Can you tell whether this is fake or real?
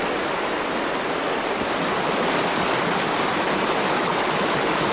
real